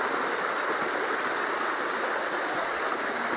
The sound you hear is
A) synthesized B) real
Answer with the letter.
B